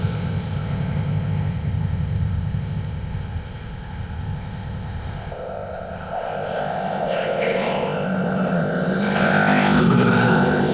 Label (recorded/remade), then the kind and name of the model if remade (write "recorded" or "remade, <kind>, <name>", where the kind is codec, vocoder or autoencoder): remade, codec, ZipCodec